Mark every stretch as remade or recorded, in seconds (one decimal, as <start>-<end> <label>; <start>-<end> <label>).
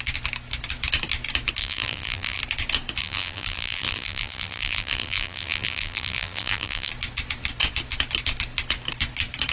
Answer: 0.0-1.6 recorded; 1.6-2.4 remade; 2.4-3.0 recorded; 3.0-6.9 remade; 6.9-9.5 recorded